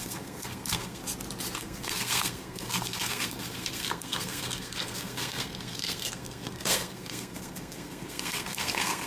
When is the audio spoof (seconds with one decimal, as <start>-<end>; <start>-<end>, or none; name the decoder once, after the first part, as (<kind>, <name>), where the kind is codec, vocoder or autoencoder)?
0.0-1.0 (codec, SNAC); 1.6-9.1